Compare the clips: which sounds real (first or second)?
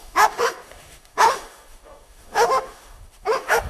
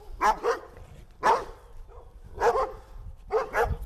second